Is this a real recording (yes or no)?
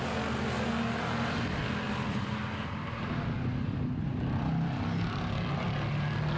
yes